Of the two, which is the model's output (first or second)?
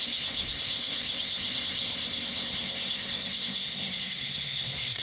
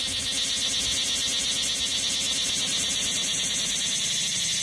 first